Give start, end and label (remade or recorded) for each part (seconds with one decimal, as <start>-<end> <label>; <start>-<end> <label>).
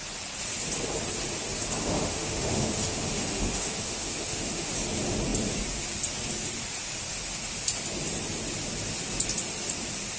0.0-1.8 recorded; 1.8-4.7 remade; 4.7-10.2 recorded